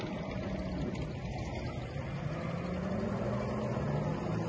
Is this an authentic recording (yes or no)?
yes